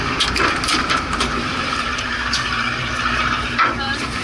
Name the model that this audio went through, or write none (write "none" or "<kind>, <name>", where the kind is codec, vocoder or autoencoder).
vocoder, BigVGAN v2